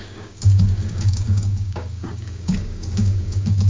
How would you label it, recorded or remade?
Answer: remade